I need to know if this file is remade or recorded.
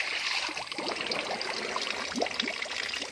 remade